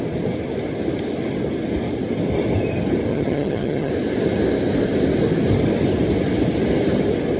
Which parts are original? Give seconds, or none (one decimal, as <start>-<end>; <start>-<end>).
0.0-3.1; 3.9-7.4